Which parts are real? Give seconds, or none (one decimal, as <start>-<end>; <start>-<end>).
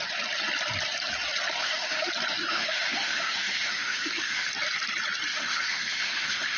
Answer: 0.0-1.6; 2.1-2.5; 4.5-5.3